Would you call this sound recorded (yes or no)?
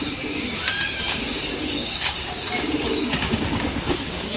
no